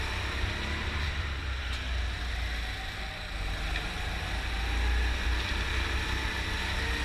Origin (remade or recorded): recorded